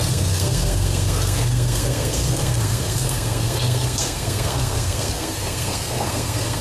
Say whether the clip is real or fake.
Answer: fake